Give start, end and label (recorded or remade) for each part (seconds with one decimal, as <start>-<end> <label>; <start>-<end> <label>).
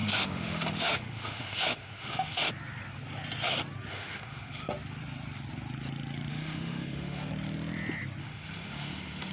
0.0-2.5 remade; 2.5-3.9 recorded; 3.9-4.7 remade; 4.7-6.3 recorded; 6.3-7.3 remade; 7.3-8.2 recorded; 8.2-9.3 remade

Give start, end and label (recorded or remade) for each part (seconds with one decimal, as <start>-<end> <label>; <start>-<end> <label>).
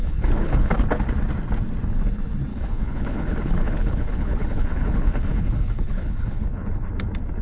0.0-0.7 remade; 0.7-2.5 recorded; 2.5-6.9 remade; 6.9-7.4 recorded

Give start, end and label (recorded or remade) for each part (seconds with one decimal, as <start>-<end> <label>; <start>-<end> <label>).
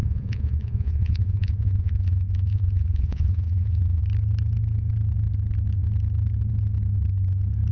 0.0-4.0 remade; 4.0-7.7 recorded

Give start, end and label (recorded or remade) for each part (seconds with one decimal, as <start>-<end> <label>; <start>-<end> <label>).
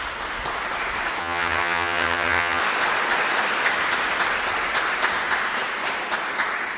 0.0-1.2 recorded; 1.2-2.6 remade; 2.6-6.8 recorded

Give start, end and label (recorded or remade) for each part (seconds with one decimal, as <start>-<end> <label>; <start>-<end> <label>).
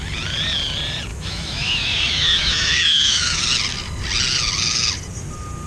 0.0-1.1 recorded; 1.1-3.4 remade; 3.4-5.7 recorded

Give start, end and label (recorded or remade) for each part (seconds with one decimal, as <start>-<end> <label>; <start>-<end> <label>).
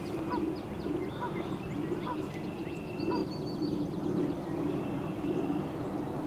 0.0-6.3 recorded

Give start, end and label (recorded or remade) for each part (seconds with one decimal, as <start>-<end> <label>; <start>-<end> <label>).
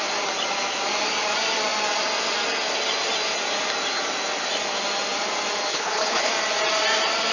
0.0-5.7 recorded; 5.7-6.3 remade; 6.3-7.3 recorded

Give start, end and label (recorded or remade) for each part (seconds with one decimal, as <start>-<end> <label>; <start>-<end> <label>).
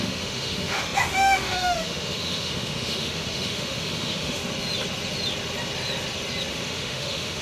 0.0-4.4 remade; 4.4-6.5 recorded; 6.5-7.4 remade